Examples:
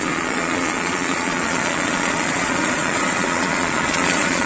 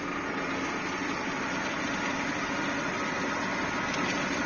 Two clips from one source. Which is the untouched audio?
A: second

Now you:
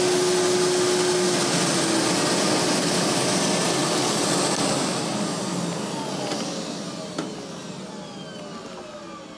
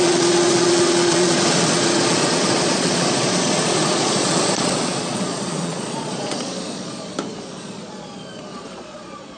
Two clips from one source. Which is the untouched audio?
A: first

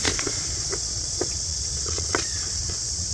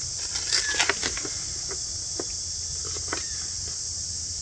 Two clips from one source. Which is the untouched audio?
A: second